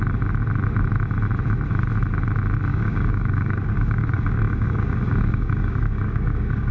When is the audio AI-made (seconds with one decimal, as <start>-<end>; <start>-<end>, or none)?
2.7-6.7